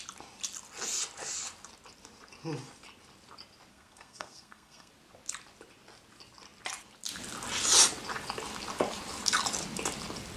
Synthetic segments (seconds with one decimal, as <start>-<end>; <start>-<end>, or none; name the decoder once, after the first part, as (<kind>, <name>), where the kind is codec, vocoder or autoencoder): 3.7-4.9 (codec, SNAC)